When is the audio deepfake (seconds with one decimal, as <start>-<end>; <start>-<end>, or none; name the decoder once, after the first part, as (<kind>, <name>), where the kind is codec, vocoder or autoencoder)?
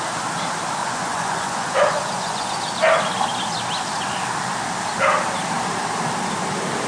0.8-2.5 (vocoder, Vocos)